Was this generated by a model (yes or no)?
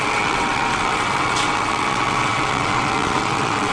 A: yes